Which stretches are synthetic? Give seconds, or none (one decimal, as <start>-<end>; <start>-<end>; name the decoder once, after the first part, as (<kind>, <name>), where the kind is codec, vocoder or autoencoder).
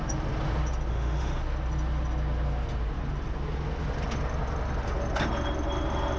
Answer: 0.9-1.4 (autoencoder, DAC-VAE)